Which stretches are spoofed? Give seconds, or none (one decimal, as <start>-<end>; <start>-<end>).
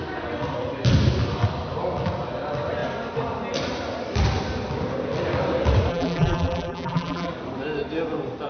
5.9-7.3